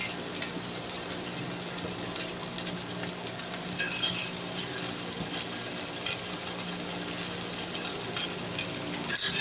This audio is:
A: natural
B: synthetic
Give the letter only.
A